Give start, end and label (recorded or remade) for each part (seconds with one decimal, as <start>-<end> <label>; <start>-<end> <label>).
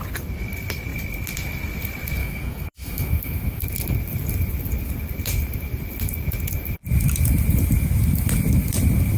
0.0-2.2 recorded; 2.2-3.6 remade; 3.6-9.2 recorded